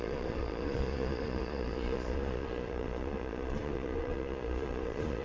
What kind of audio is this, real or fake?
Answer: fake